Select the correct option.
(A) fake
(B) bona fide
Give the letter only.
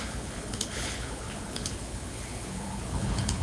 A